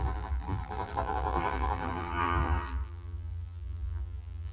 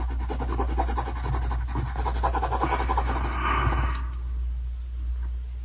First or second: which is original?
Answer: second